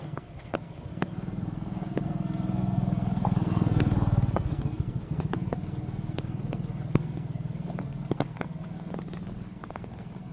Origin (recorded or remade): remade